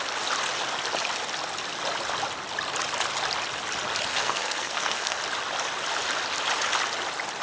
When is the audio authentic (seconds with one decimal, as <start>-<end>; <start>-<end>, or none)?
0.0-4.1; 5.2-7.4